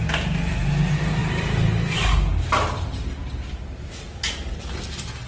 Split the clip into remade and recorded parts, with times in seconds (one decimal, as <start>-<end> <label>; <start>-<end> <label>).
0.0-5.3 recorded